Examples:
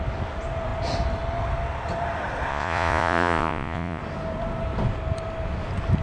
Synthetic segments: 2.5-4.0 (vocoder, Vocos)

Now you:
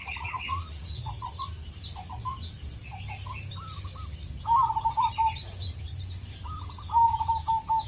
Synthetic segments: 0.0-1.5 (vocoder, Vocos)

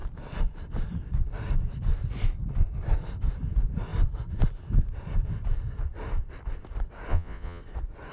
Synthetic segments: 7.1-7.6 (vocoder, Vocos)

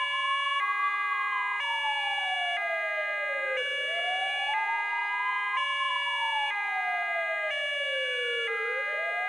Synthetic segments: none